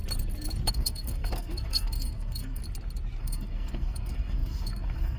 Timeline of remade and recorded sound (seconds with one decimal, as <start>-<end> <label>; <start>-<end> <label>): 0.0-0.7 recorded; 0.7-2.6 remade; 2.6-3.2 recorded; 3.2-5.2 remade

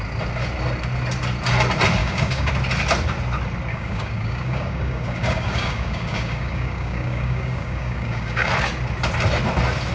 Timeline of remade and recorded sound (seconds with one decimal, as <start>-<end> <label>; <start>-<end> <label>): 0.0-2.0 recorded; 2.0-2.5 remade; 2.5-3.7 recorded; 3.7-8.5 remade; 8.5-9.9 recorded

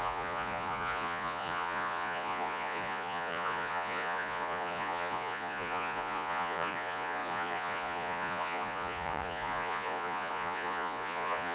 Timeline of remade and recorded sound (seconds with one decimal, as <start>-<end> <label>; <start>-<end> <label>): 0.0-11.5 remade